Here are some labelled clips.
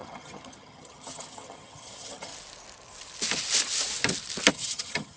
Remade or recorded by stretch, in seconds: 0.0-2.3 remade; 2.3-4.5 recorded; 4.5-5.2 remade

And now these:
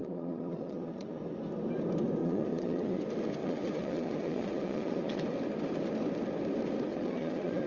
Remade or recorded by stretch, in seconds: 0.0-1.2 remade; 1.2-2.2 recorded; 2.2-3.0 remade; 3.0-3.4 recorded; 3.4-5.2 remade; 5.2-6.9 recorded; 6.9-7.7 remade

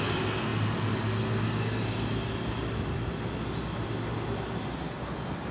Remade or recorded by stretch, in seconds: 0.0-5.5 recorded

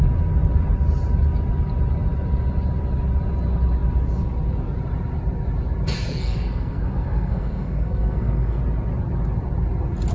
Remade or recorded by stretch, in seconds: 0.0-6.1 recorded; 6.1-8.6 remade; 8.6-10.1 recorded

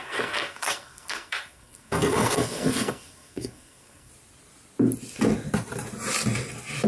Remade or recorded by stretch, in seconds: 0.0-4.1 remade; 4.1-6.9 recorded

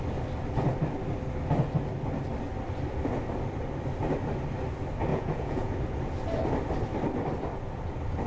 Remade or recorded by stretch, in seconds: 0.0-5.1 recorded; 5.1-5.7 remade; 5.7-8.3 recorded

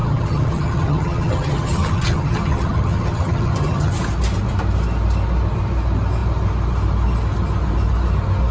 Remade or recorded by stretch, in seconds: 0.0-3.9 remade; 3.9-8.5 recorded